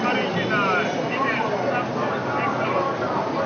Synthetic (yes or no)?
no